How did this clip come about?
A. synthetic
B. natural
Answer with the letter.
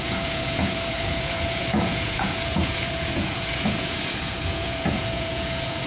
A